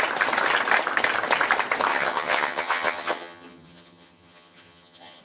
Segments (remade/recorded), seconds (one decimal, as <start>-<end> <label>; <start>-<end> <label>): 0.0-1.9 recorded; 1.9-5.2 remade